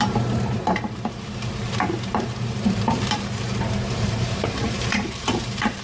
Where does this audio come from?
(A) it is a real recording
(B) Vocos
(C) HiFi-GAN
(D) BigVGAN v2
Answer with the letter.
D